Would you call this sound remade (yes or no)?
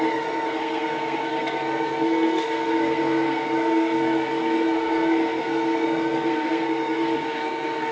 yes